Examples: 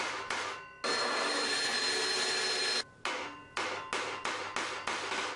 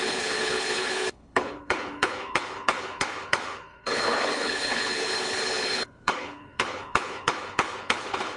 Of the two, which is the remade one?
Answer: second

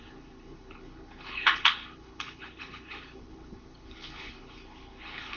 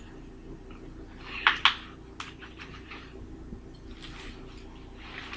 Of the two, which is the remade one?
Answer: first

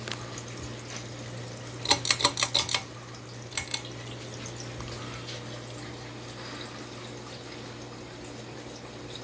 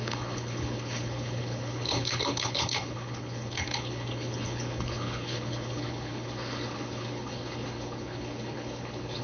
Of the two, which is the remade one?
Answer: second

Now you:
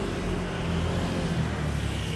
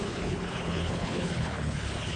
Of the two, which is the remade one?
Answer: second